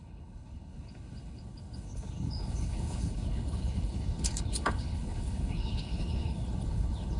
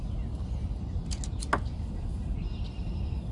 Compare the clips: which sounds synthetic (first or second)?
first